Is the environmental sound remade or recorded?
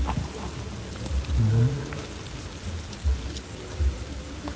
recorded